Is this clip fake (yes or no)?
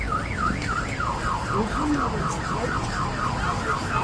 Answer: no